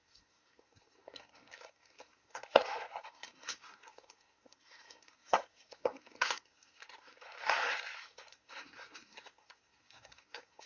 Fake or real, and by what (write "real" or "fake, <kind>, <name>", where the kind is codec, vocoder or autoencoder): fake, codec, SNAC